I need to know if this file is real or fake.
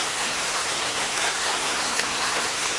fake